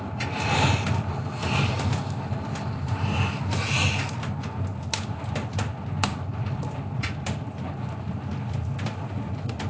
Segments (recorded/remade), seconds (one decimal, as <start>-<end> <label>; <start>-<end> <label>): 0.0-9.7 recorded